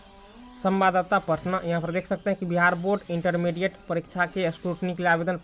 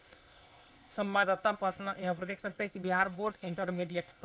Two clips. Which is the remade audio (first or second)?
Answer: second